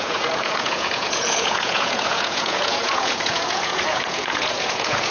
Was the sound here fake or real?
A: fake